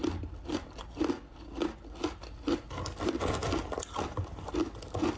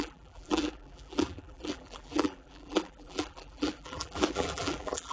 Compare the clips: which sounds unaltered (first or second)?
first